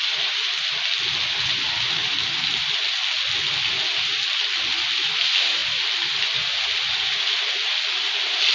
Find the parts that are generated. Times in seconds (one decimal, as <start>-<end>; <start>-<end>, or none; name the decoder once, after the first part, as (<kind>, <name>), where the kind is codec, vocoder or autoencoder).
none